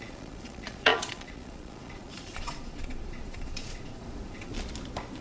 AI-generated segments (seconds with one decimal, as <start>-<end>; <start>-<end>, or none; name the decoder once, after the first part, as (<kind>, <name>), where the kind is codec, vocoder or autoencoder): 0.0-4.5 (vocoder, Vocos)